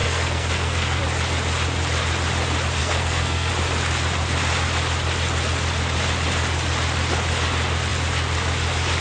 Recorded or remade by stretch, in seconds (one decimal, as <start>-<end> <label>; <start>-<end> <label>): 0.0-1.0 remade; 1.0-2.8 recorded; 2.8-3.5 remade; 3.5-9.0 recorded